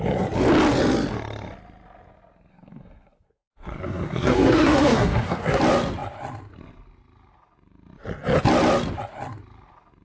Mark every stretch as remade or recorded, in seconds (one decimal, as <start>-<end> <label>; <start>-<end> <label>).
0.0-2.5 recorded; 2.5-5.6 remade; 5.6-10.0 recorded